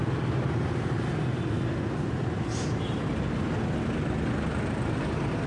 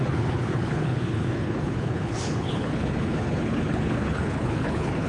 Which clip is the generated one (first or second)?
second